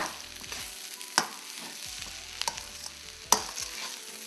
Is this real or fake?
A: real